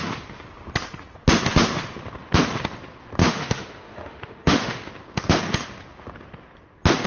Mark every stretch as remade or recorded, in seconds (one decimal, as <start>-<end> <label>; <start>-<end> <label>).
0.0-3.2 recorded; 3.2-4.9 remade; 4.9-7.1 recorded